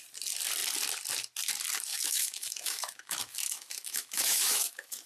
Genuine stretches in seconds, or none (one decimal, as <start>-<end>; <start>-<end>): 0.0-1.9